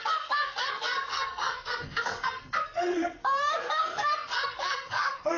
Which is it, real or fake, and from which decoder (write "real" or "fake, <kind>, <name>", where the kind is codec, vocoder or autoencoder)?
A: fake, codec, SNAC